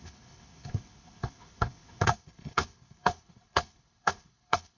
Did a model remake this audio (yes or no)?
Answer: yes